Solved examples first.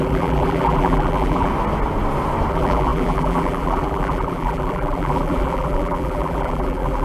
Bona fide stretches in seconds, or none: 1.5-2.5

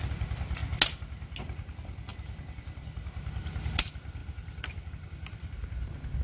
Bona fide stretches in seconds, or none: 0.6-1.4

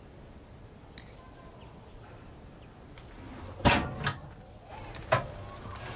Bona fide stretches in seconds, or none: 0.0-6.0

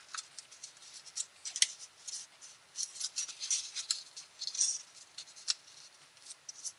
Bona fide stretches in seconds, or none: 0.0-6.8

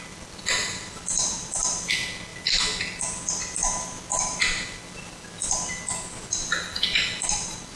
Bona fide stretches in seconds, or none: 0.0-0.6; 1.3-7.8

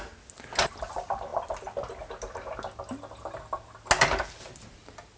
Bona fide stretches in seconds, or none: 0.0-5.2

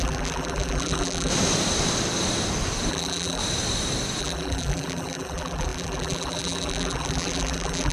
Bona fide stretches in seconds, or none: 1.3-2.9; 3.4-4.2

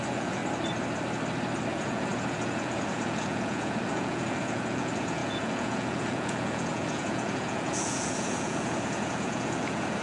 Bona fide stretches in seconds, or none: 0.4-1.7